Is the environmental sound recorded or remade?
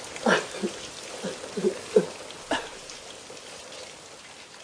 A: recorded